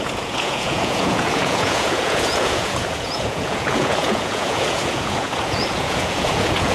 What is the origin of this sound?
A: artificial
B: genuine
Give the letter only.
A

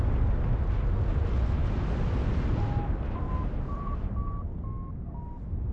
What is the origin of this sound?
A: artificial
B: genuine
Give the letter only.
B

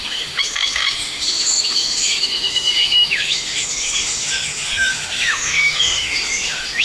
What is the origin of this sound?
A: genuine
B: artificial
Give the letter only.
B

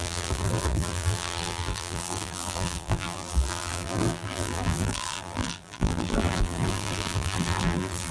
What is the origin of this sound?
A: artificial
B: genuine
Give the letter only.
A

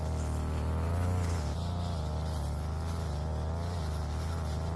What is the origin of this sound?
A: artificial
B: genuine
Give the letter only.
B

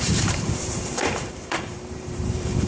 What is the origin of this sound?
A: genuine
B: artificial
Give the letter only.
B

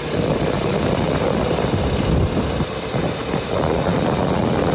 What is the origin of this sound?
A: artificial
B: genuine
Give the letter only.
B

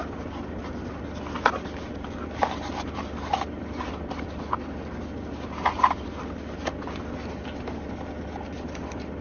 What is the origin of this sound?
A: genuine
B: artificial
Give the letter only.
A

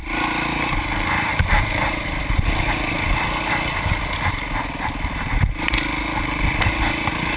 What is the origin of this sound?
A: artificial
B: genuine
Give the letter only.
B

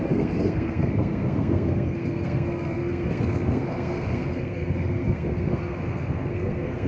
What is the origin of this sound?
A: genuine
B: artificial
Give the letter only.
B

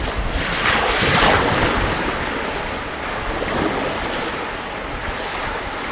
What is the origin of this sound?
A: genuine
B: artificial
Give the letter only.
A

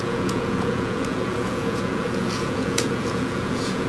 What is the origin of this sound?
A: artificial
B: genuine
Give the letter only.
A